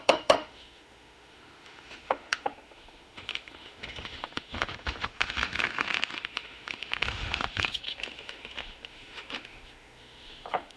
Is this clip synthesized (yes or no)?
yes